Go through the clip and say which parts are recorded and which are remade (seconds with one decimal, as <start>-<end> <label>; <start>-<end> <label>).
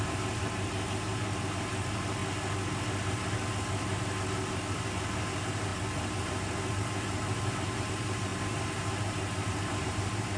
0.0-2.2 remade; 2.2-4.5 recorded; 4.5-10.4 remade